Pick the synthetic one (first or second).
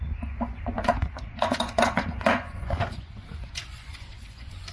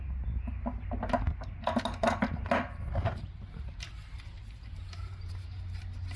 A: first